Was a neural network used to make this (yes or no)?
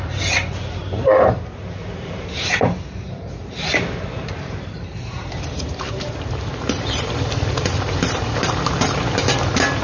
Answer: yes